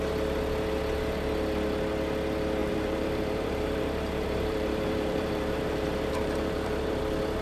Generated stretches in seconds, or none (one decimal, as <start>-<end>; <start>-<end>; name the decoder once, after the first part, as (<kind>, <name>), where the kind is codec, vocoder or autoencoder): 2.6-7.0 (vocoder, BigVGAN v2)